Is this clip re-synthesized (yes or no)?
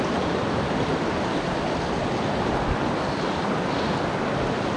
no